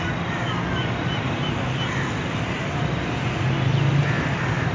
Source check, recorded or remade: recorded